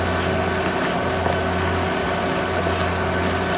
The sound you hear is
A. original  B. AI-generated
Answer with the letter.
A